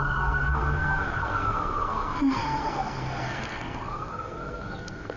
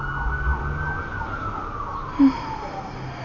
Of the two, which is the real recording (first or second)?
second